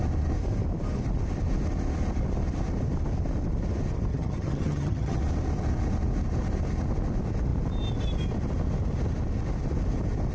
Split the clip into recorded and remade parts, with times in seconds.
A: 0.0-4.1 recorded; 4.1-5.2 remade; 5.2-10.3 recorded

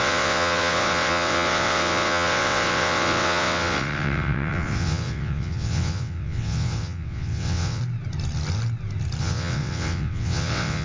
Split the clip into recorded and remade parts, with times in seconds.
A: 0.0-7.8 remade; 7.8-9.2 recorded; 9.2-10.8 remade

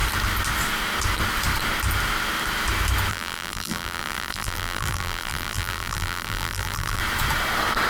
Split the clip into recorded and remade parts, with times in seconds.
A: 0.0-3.1 recorded; 3.1-7.0 remade; 7.0-7.9 recorded

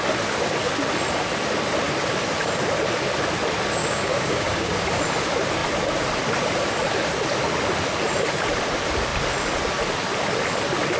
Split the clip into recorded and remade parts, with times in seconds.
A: 0.0-3.8 recorded; 3.8-5.0 remade; 5.0-11.0 recorded

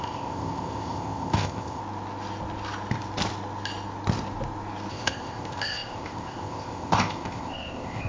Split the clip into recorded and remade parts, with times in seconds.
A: 0.0-1.8 remade; 1.8-4.9 recorded; 4.9-8.1 remade